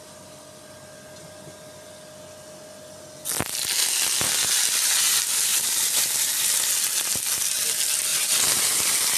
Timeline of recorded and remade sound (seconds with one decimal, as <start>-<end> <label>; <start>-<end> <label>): 0.0-5.5 recorded; 5.5-6.5 remade; 6.5-8.1 recorded; 8.1-9.2 remade